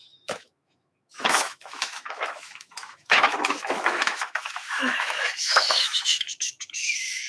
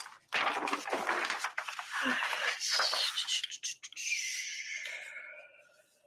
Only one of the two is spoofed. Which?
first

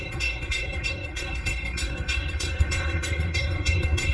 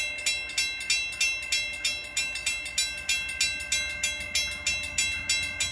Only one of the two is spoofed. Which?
first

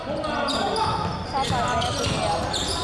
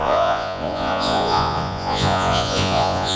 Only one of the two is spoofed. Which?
second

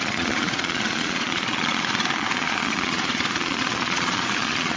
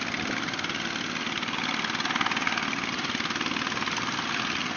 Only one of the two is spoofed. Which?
first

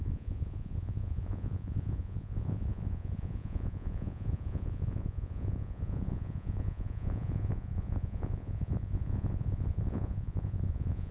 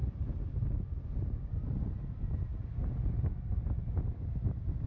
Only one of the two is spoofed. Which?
first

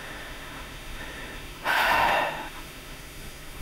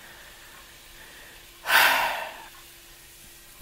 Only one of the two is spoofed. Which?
first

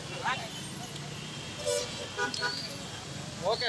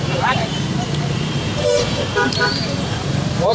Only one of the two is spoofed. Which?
second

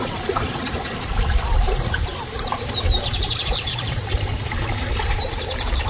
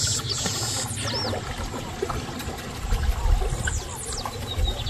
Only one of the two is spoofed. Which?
first